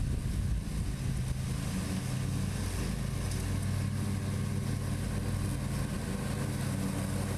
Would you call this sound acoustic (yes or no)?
yes